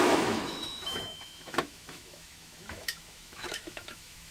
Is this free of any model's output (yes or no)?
no